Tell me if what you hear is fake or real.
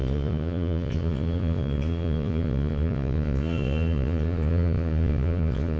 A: fake